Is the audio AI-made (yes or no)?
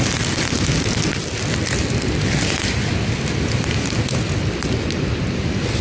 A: no